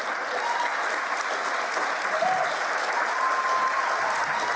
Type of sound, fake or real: real